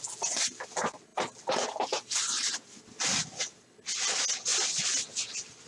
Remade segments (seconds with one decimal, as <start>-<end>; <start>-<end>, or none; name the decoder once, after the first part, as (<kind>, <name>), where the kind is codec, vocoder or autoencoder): none